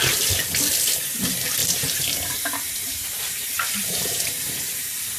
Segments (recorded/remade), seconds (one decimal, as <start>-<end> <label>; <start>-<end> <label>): 0.0-1.6 recorded; 1.6-4.7 remade; 4.7-5.2 recorded